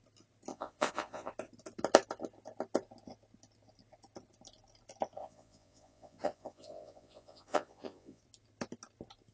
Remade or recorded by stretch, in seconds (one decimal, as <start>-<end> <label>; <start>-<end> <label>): 0.0-0.5 recorded; 0.5-1.3 remade; 1.3-5.2 recorded; 5.2-8.2 remade; 8.2-9.3 recorded